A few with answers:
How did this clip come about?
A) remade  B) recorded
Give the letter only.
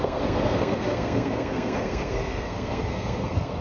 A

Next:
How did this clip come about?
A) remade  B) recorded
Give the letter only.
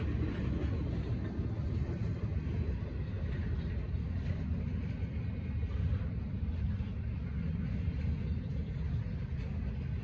B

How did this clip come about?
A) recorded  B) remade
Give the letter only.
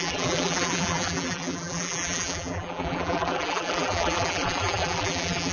B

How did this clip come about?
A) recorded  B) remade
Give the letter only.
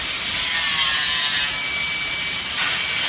A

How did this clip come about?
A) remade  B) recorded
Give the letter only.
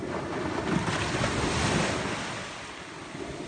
B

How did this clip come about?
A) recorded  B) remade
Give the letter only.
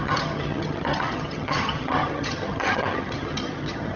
B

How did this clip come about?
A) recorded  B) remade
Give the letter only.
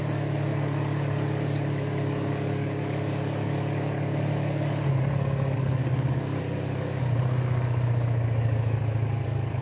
B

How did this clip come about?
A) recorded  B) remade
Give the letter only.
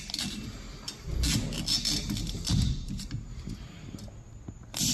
A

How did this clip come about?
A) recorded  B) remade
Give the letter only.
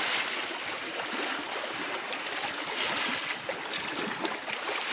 A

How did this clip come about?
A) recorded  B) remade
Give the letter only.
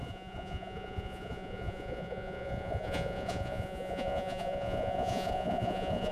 B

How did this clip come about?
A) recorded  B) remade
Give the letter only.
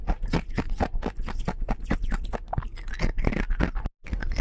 A